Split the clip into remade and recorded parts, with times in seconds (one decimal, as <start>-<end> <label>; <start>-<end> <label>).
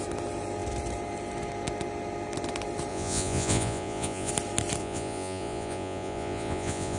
0.0-2.9 recorded; 2.9-4.3 remade; 4.3-4.8 recorded; 4.8-7.0 remade